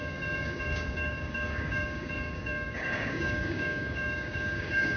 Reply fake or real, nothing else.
fake